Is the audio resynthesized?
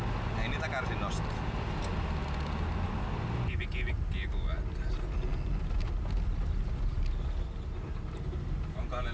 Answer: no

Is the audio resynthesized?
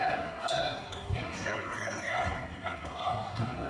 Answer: yes